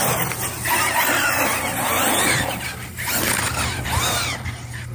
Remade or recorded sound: recorded